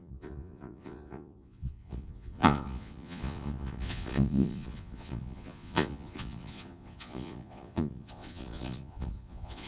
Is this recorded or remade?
remade